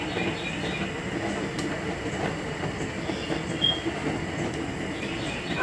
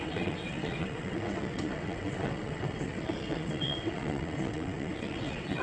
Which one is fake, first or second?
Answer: second